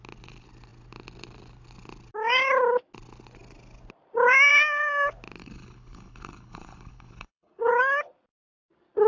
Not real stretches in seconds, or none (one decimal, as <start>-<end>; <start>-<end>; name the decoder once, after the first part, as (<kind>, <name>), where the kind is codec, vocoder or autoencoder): 5.4-7.7 (codec, HILCodec)